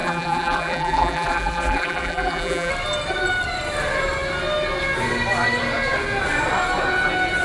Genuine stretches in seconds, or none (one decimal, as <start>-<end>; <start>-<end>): 2.7-7.4